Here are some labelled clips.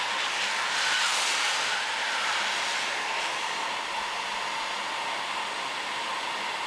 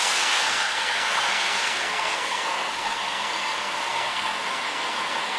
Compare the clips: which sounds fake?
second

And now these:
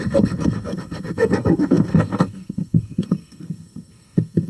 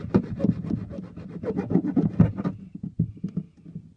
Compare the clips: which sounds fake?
first